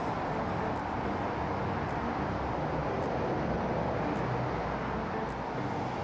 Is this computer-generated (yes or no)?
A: no